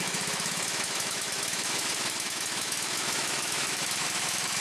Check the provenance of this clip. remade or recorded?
remade